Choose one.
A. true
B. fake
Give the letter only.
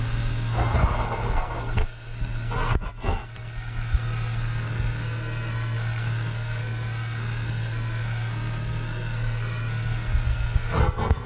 B